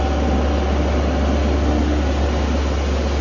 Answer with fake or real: real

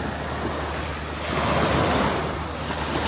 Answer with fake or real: real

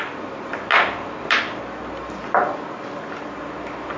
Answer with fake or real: real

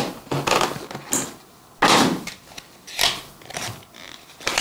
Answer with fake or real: real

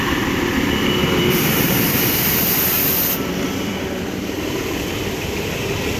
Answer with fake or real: fake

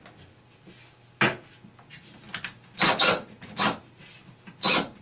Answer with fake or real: real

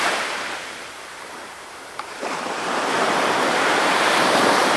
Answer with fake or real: fake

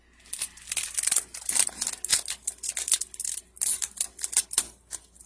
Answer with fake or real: real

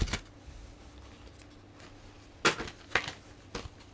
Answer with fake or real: real